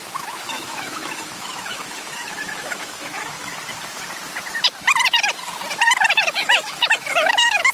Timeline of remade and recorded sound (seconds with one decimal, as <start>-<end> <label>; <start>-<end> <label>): 0.0-3.5 remade; 3.5-6.3 recorded; 6.3-7.7 remade

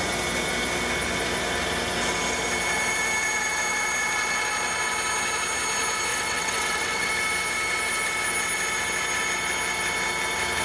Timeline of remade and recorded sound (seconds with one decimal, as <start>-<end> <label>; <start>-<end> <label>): 0.0-6.1 recorded; 6.1-7.1 remade; 7.1-10.6 recorded

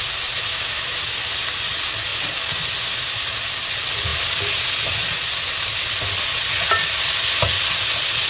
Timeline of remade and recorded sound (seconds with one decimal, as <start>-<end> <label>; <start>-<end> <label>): 0.0-0.5 recorded; 0.5-1.0 remade; 1.0-8.3 recorded